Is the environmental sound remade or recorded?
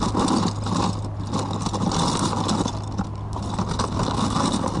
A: recorded